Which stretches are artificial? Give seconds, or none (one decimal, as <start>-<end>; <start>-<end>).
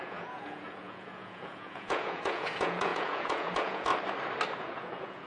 0.0-3.9; 4.6-5.3